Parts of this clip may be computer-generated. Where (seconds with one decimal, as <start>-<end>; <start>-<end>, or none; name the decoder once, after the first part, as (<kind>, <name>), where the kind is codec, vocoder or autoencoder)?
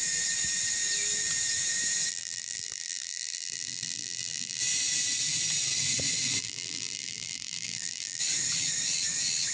2.1-4.6 (vocoder, BigVGAN v2); 6.4-8.2